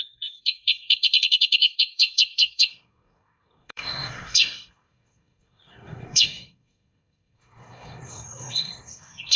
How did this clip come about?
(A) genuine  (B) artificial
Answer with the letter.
B